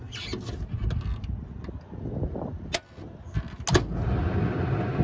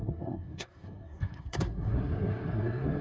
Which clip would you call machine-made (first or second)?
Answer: second